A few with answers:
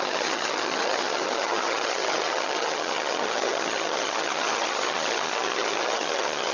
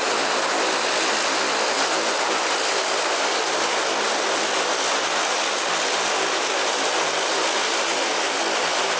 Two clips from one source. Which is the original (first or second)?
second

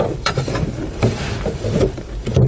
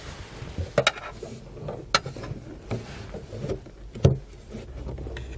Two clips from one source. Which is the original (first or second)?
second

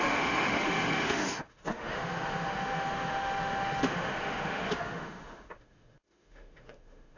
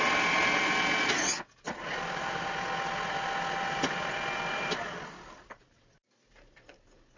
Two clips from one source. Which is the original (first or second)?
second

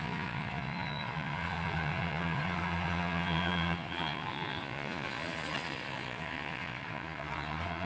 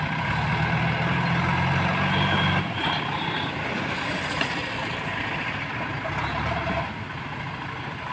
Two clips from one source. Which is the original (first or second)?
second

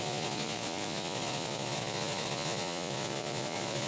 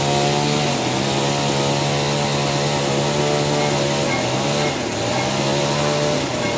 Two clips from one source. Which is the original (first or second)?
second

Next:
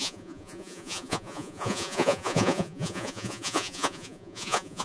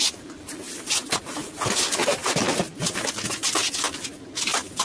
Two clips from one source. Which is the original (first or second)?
second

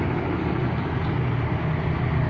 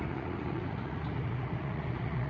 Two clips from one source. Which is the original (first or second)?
first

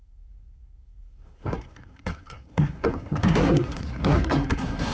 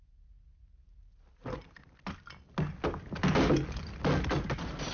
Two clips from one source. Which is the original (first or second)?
second